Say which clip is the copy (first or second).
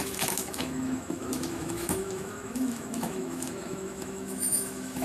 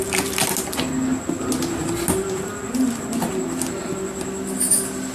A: first